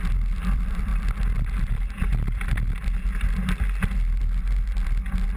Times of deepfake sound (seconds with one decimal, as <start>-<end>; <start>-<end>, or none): 0.0-0.9; 1.6-2.1